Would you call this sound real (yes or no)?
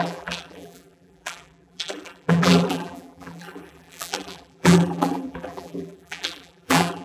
no